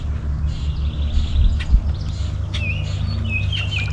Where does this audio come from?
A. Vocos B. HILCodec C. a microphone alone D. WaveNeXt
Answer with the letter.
C